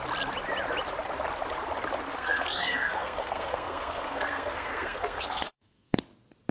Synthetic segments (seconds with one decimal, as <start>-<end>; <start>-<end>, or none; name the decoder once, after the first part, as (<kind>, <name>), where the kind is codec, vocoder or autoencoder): 2.1-6.0 (codec, SNAC)